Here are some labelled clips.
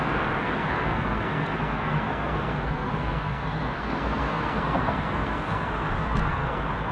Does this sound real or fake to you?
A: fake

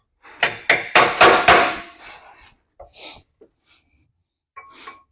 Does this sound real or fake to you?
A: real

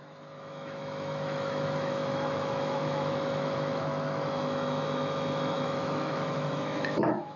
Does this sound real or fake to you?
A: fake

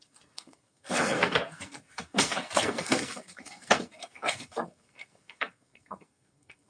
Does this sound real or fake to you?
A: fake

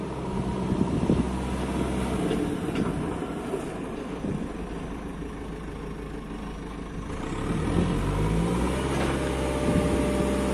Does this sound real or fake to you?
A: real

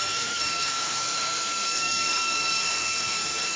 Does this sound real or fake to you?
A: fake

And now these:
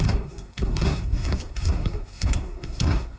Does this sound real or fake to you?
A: fake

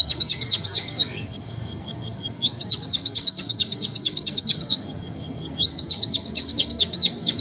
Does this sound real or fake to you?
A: fake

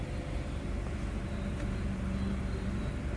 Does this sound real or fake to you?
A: real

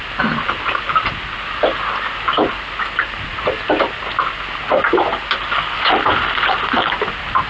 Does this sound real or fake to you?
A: real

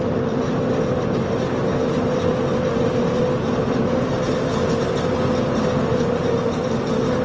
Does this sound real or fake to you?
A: real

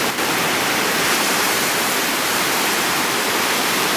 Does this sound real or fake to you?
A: fake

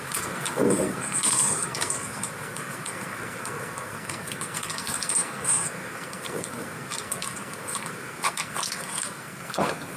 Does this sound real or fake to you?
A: fake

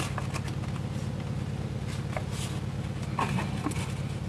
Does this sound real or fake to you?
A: real